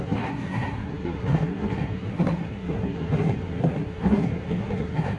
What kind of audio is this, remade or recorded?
remade